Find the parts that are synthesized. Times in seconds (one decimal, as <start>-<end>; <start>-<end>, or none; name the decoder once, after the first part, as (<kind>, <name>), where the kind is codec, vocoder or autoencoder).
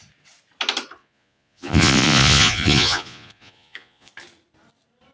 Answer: 1.0-4.1 (vocoder, Vocos)